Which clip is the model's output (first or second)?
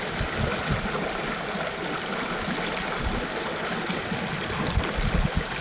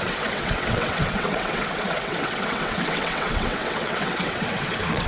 second